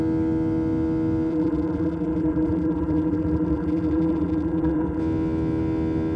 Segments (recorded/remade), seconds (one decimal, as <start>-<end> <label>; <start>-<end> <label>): 0.0-1.3 recorded; 1.3-5.0 remade; 5.0-6.2 recorded